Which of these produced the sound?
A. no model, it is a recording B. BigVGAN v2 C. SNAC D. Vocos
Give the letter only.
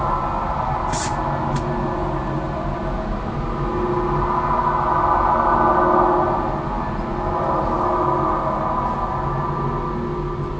A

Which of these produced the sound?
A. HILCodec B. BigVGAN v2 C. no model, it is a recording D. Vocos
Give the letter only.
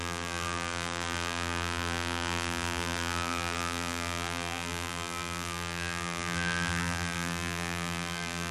B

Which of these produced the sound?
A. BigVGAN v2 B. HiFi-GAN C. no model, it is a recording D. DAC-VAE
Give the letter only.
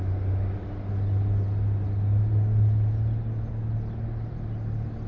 C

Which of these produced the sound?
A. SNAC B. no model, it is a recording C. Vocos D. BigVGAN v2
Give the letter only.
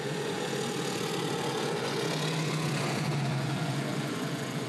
C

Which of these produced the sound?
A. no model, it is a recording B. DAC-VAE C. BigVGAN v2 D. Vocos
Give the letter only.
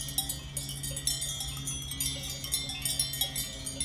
A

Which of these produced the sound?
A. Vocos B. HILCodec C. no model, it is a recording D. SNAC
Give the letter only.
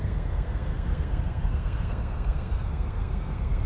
D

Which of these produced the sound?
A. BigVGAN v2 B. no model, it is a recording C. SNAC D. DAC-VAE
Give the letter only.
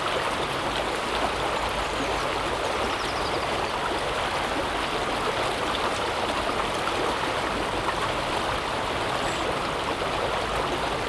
B